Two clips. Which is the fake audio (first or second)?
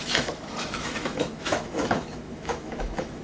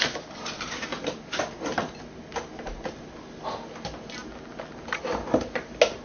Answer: first